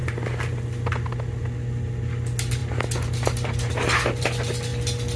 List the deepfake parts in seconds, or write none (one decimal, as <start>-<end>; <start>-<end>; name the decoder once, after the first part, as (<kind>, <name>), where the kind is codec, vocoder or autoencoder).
none